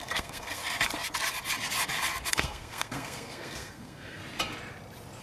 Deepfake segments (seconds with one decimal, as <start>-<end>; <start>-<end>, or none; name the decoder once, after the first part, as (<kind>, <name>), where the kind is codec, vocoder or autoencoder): 0.0-0.6 (codec, SNAC); 2.3-4.2